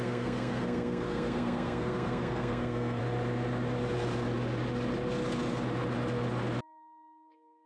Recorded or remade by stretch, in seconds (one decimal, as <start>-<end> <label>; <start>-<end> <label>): 0.0-3.0 remade; 3.0-6.6 recorded; 6.6-7.7 remade

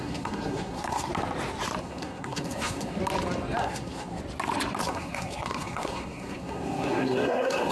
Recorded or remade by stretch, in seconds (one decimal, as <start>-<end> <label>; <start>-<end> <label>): 0.0-1.1 remade; 1.1-1.8 recorded; 1.8-3.0 remade; 3.0-3.6 recorded; 3.6-4.2 remade; 4.2-4.8 recorded; 4.8-7.7 remade

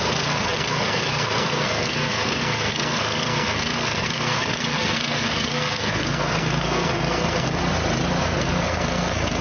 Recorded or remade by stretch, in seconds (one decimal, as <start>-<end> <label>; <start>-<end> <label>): 0.0-7.6 remade; 7.6-8.4 recorded; 8.4-9.4 remade

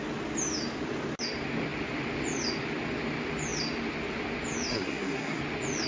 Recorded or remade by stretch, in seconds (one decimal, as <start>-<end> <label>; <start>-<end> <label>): 0.0-4.7 recorded; 4.7-5.4 remade; 5.4-5.9 recorded

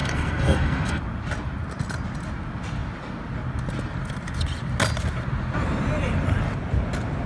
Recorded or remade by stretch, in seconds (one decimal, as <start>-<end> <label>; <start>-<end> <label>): 0.0-1.0 remade; 1.0-7.3 recorded

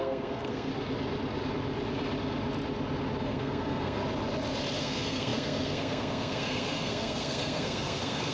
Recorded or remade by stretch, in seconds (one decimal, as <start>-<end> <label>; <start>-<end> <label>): 0.0-0.7 remade; 0.7-3.2 recorded; 3.2-4.0 remade; 4.0-4.8 recorded; 4.8-8.3 remade

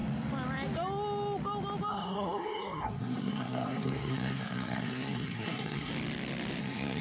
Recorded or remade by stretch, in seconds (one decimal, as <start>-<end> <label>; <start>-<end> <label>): 0.0-1.9 recorded; 1.9-5.9 remade; 5.9-6.6 recorded; 6.6-7.0 remade